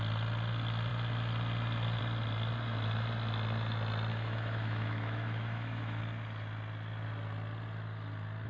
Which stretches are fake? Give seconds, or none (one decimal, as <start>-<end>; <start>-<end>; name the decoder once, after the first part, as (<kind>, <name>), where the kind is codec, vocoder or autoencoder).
4.1-6.0 (autoencoder, DAC-VAE)